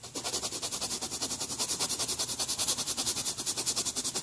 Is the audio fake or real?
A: real